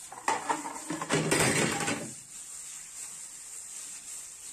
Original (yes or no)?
yes